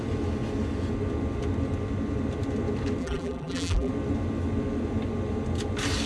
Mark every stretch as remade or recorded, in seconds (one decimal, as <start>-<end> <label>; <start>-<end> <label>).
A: 0.0-3.0 recorded; 3.0-3.9 remade; 3.9-6.1 recorded